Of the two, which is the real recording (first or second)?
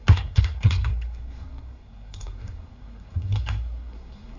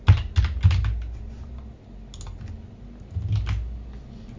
second